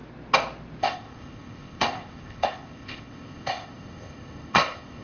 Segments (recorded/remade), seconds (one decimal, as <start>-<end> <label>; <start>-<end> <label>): 0.0-0.8 recorded; 0.8-5.0 remade